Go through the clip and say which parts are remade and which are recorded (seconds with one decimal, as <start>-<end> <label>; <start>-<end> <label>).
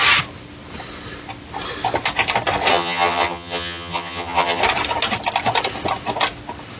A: 0.0-2.7 recorded; 2.7-4.6 remade; 4.6-6.8 recorded